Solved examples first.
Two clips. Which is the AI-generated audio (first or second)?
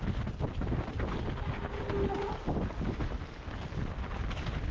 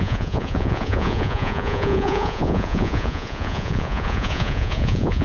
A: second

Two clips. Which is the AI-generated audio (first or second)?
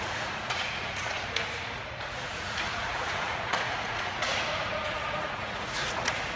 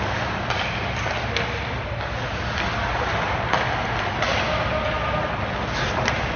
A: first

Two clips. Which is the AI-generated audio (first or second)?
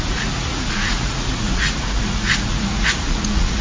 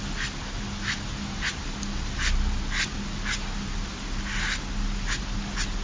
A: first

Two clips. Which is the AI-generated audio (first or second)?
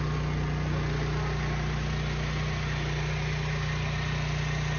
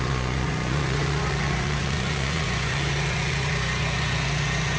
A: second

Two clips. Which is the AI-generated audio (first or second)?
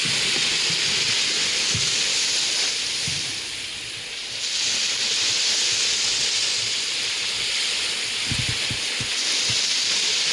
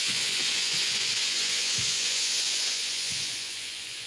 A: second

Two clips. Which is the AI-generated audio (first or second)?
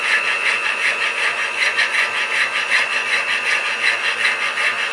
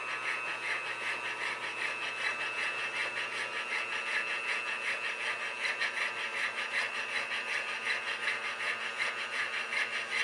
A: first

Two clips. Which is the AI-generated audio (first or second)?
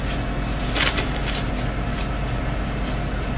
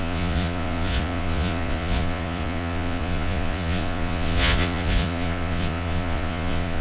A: second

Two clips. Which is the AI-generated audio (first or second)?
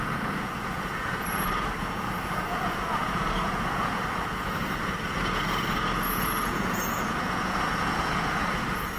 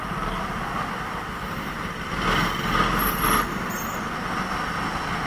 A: first